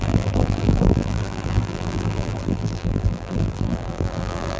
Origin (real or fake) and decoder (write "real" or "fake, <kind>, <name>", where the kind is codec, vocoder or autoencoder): fake, vocoder, BigVGAN v2